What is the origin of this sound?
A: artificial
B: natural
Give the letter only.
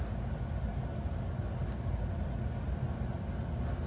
B